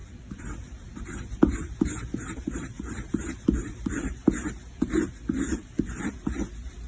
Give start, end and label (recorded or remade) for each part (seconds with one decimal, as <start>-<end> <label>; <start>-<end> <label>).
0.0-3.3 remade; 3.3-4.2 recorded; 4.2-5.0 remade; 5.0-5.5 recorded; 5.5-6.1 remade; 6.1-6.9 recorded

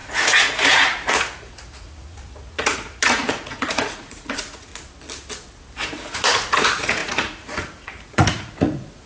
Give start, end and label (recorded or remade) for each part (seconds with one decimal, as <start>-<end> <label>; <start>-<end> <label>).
0.0-4.7 remade; 4.7-6.1 recorded; 6.1-9.1 remade

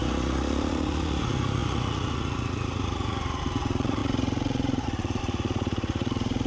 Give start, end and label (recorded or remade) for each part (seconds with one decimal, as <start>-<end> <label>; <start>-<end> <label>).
0.0-6.5 remade